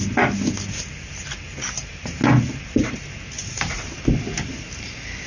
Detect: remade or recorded recorded